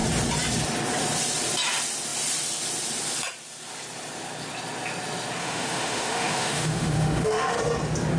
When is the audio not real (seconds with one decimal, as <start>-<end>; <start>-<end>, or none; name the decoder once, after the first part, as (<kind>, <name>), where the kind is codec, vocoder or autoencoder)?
5.4-7.6 (autoencoder, DAC-VAE)